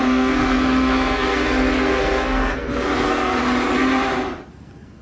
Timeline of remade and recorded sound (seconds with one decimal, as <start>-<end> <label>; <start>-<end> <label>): 0.0-3.4 remade; 3.4-4.5 recorded; 4.5-5.0 remade